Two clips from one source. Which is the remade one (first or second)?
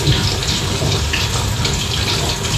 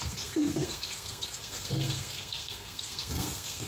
second